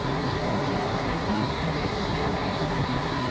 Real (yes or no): no